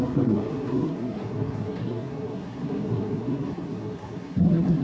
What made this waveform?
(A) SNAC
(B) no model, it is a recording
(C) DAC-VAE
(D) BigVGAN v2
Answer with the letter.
A